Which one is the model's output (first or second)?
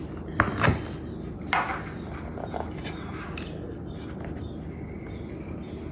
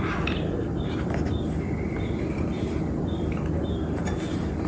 second